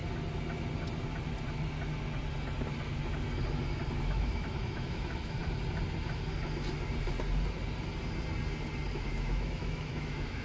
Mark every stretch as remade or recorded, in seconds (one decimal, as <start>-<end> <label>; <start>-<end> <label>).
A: 0.0-4.0 recorded; 4.0-5.4 remade; 5.4-8.9 recorded; 8.9-10.4 remade